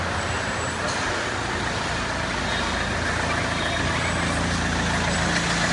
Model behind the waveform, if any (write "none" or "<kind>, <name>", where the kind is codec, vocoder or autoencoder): none